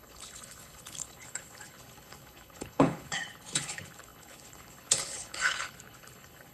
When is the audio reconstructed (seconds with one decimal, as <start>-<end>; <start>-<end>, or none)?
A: 0.0-6.5